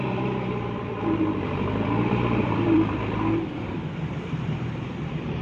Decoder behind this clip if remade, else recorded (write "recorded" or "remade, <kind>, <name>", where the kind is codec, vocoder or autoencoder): remade, vocoder, BigVGAN v2